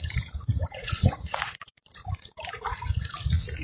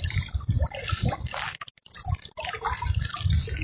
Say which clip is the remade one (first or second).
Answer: first